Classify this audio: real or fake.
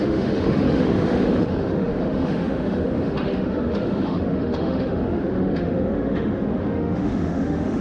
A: fake